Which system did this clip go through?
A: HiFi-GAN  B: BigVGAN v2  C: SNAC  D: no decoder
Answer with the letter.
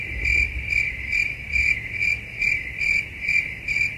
D